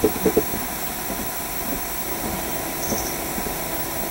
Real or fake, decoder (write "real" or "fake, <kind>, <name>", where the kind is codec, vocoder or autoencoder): real